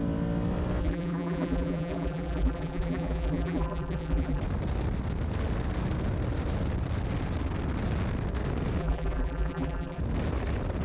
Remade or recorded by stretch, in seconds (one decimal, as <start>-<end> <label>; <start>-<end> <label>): 0.0-0.8 recorded; 0.8-4.4 remade; 4.4-8.8 recorded; 8.8-10.0 remade; 10.0-10.8 recorded